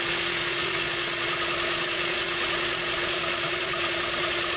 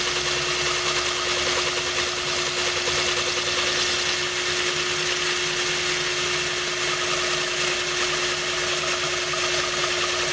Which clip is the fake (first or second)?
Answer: first